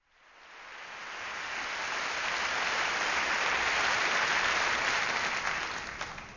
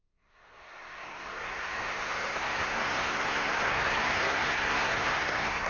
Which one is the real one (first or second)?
first